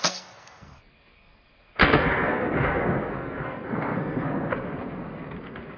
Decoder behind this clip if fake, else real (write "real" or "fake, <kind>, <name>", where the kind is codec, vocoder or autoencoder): fake, codec, SNAC